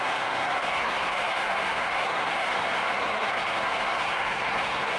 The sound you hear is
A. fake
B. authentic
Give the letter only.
A